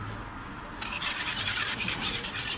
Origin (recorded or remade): recorded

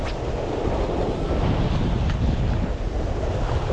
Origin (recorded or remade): recorded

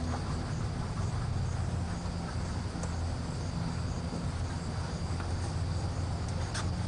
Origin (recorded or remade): recorded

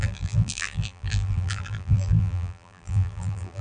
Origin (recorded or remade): remade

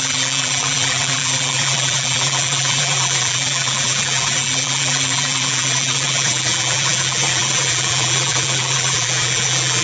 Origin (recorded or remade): remade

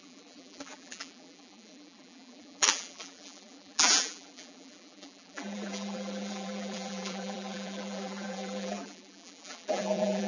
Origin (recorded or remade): remade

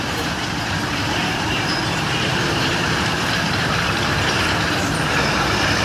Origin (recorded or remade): remade